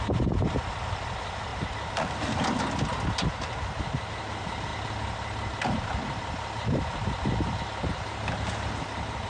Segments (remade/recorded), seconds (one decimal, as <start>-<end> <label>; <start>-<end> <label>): 0.0-9.3 recorded